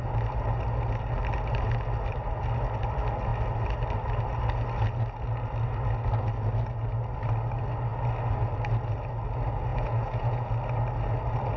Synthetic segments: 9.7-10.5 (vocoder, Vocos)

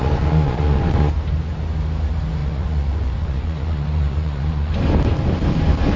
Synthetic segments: 0.0-1.1 (vocoder, Vocos); 2.4-4.7